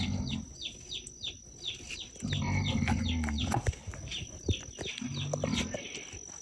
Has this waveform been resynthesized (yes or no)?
no